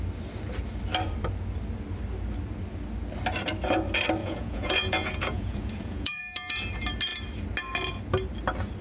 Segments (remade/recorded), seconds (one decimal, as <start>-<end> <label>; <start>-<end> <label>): 0.0-4.2 recorded; 4.2-6.2 remade; 6.2-8.8 recorded